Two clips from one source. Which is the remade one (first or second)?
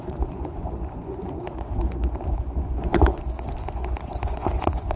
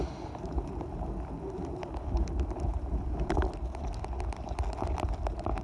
first